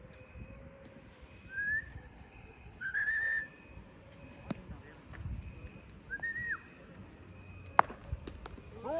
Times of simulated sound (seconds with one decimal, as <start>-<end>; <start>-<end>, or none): 1.9-3.4